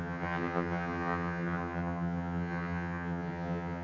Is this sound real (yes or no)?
no